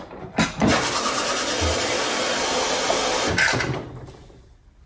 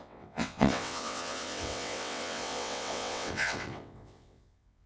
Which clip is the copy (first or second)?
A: second